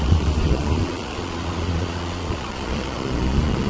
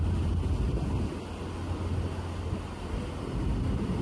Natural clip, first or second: second